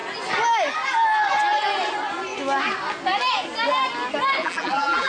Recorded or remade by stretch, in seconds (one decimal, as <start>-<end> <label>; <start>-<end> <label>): 0.0-4.4 recorded; 4.4-5.1 remade